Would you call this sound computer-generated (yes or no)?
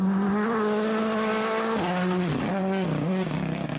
no